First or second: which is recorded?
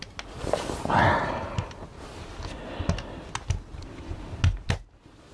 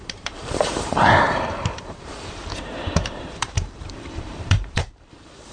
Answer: first